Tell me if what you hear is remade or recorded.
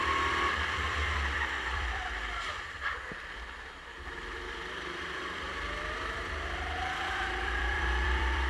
remade